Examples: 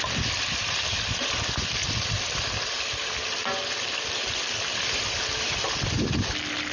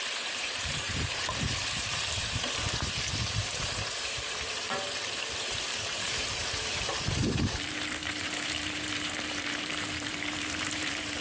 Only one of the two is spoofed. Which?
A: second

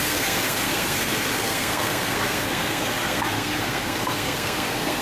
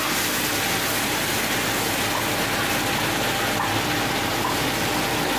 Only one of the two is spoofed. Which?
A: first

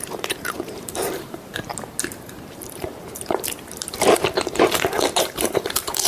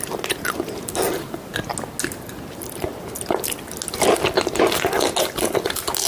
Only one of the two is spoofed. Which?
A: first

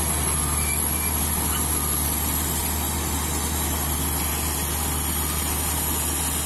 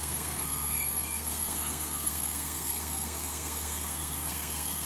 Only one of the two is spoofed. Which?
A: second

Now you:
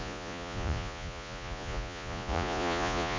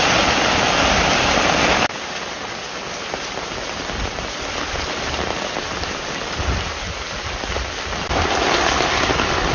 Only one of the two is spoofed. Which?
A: first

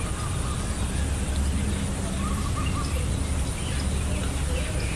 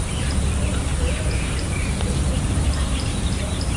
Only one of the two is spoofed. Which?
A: second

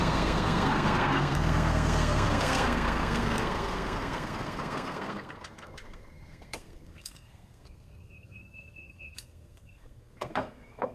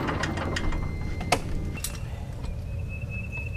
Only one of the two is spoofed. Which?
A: first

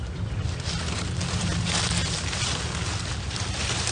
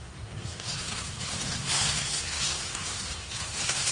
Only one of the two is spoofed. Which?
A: second